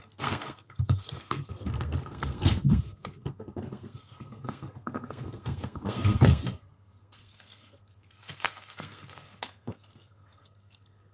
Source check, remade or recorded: remade